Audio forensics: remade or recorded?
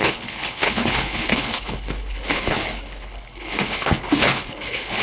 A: remade